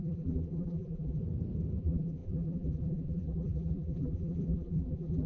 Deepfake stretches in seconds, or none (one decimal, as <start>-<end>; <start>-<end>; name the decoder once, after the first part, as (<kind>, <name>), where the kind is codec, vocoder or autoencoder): 0.0-1.2 (vocoder, BigVGAN v2); 1.8-5.3